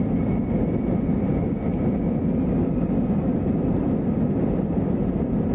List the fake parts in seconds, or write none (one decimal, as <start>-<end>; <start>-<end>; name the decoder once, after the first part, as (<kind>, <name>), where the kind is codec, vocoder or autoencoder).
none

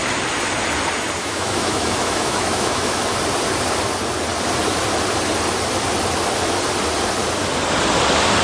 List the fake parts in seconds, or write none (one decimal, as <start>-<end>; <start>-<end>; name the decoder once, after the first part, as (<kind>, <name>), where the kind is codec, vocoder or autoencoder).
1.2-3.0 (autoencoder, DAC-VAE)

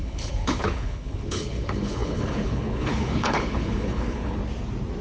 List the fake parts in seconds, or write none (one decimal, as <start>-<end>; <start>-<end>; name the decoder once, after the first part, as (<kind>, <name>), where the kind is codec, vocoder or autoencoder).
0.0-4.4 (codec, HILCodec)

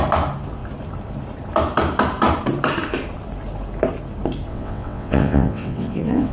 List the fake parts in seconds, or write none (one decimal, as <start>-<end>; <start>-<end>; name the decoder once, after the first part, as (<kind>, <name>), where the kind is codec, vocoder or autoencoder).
4.5-6.3 (vocoder, WaveNeXt)